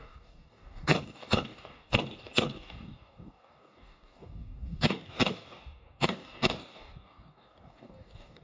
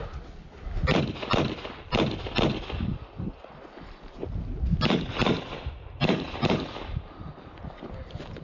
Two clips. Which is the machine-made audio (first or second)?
first